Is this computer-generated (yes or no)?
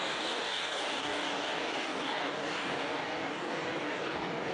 yes